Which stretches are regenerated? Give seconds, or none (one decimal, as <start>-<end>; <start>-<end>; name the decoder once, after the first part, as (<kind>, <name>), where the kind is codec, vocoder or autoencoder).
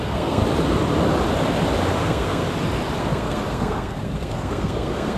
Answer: 0.0-0.4 (codec, SNAC); 2.0-2.4; 3.0-5.2